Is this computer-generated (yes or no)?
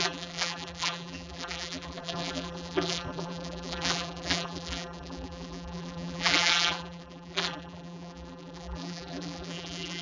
yes